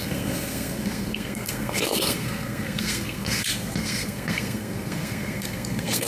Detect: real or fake fake